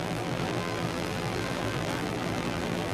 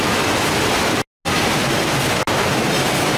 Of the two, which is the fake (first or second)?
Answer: first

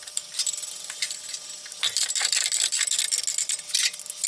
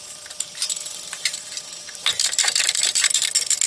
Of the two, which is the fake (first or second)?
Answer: second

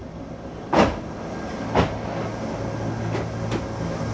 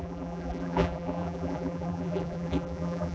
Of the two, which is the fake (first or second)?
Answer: second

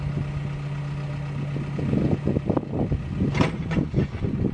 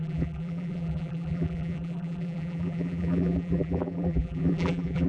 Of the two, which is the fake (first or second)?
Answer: second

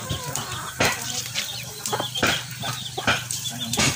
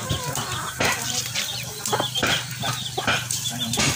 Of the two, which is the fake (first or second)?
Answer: first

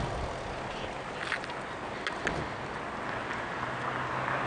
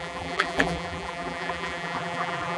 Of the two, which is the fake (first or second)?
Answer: second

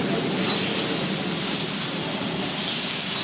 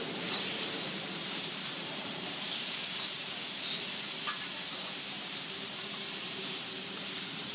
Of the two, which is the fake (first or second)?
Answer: second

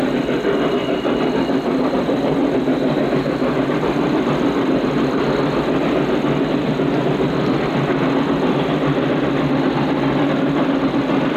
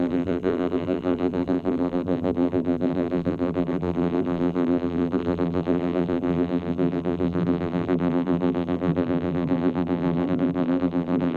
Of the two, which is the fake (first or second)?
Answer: second